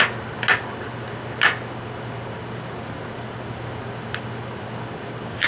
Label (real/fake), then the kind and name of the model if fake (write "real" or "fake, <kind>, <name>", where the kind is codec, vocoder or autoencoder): real